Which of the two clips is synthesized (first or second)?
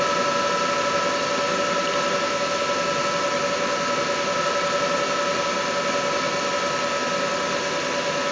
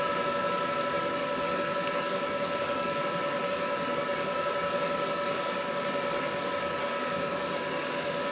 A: second